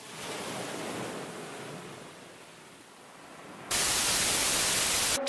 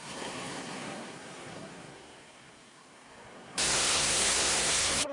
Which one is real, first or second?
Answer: first